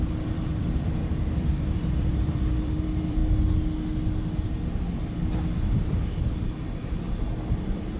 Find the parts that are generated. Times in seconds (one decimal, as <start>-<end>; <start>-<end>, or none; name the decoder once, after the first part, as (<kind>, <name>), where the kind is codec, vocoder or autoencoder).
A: 0.0-3.2 (vocoder, BigVGAN v2); 7.5-8.0